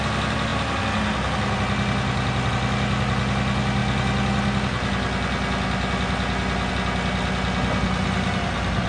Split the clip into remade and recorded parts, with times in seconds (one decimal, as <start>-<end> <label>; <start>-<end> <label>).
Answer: 0.0-8.9 recorded